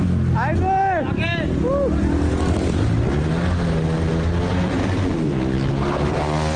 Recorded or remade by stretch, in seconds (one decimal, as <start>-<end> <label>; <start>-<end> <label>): 0.0-6.6 recorded